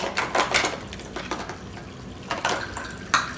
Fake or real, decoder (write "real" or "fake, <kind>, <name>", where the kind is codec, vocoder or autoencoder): real